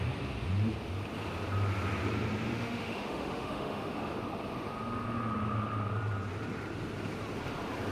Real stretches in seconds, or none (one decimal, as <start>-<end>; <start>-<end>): 0.0-2.5; 4.2-7.9